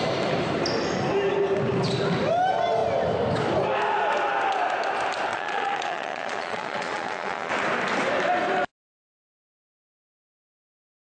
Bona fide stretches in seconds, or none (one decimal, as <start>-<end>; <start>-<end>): 0.0-5.3; 7.5-11.1